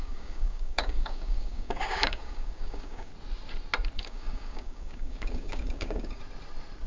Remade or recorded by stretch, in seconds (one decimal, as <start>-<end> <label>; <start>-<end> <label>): 0.0-3.1 remade; 3.1-4.0 recorded; 4.0-6.2 remade; 6.2-6.9 recorded